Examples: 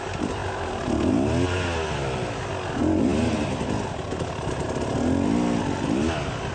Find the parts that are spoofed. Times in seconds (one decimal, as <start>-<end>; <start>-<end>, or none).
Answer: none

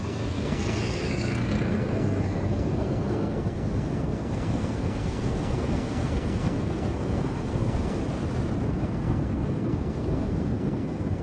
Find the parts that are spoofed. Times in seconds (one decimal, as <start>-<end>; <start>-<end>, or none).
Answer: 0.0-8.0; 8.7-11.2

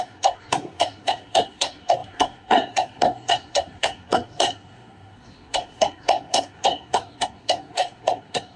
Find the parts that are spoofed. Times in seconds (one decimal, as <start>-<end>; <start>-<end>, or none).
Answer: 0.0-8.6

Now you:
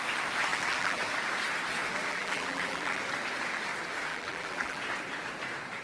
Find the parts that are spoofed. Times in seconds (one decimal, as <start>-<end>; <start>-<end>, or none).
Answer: 0.5-1.0; 2.1-3.0; 4.1-4.8

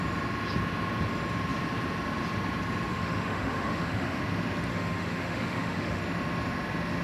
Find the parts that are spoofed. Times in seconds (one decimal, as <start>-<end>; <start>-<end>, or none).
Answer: 2.9-4.2; 4.7-6.0

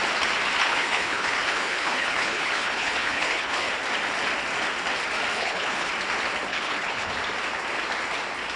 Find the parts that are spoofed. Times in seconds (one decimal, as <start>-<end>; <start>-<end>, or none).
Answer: 0.6-3.7; 5.3-5.9; 6.5-7.1

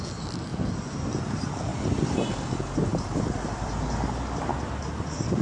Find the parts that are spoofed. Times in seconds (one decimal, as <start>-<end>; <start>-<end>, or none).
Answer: 0.5-1.1; 2.9-3.9

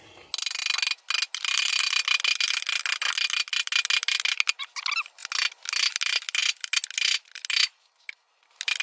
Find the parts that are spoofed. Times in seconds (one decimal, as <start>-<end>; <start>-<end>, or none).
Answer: none